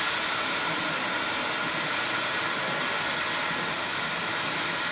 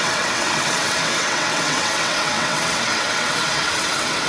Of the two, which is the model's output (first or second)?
second